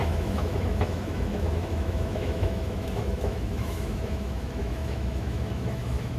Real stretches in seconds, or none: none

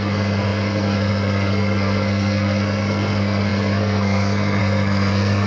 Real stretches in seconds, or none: none

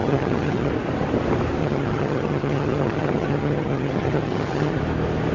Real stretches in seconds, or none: 0.7-1.6; 4.8-5.3

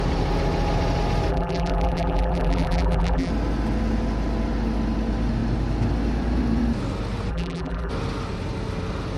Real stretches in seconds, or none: 0.0-1.3; 3.3-7.3; 7.9-9.2

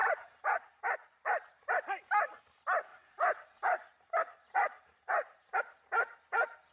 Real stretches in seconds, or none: 0.8-2.9; 5.6-6.7